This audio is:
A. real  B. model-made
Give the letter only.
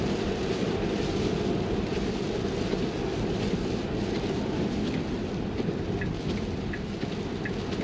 A